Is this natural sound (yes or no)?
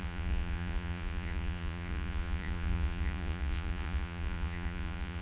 no